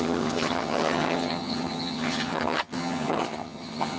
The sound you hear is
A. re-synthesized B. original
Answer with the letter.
A